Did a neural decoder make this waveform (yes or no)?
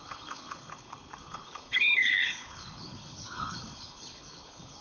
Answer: yes